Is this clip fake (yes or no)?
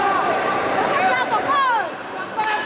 yes